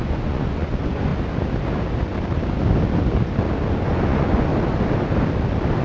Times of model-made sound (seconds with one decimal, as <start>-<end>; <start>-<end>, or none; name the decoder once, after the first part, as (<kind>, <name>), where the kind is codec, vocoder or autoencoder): 0.0-1.1 (vocoder, Vocos); 3.7-4.5